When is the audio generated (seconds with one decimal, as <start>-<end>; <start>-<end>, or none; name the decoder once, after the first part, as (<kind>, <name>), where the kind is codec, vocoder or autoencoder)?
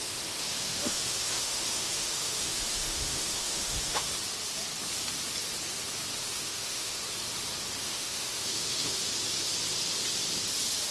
0.0-4.1 (autoencoder, DAC-VAE); 6.2-7.0; 7.8-9.0